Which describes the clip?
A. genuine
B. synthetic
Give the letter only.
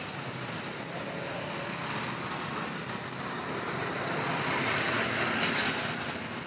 A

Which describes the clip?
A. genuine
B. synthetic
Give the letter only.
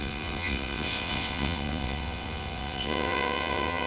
B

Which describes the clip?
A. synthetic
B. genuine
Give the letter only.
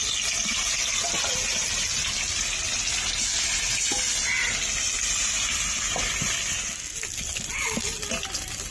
B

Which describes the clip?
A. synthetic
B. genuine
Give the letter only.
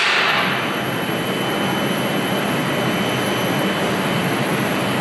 B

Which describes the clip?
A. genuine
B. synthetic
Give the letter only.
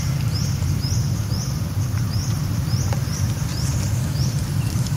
B